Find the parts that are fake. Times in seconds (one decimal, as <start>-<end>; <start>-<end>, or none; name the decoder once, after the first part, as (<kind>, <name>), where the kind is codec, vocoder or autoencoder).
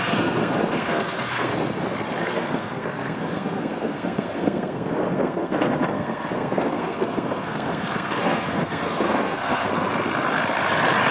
0.0-1.5 (codec, SNAC); 2.2-9.7